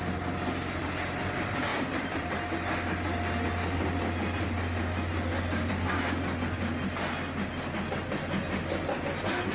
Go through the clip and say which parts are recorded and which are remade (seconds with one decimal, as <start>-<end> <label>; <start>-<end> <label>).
0.0-9.5 recorded